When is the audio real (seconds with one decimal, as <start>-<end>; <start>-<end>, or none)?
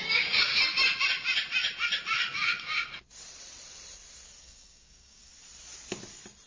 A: 0.5-4.4; 5.3-6.5